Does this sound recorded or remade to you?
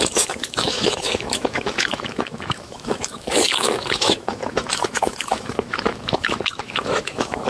remade